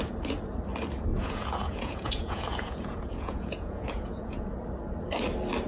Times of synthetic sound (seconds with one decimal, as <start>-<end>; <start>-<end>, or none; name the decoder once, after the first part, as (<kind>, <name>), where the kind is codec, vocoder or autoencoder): 1.1-4.5 (vocoder, Vocos)